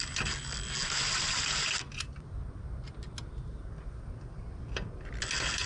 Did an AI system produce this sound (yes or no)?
no